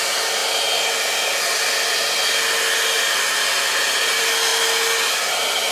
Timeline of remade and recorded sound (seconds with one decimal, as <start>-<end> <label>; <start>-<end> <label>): 0.0-5.7 recorded